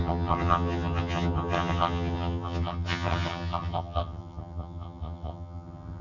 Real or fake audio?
fake